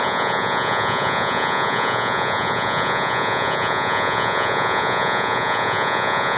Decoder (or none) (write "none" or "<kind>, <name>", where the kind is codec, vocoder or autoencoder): vocoder, Vocos